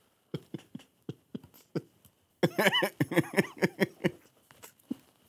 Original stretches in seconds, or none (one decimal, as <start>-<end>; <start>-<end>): 1.3-4.5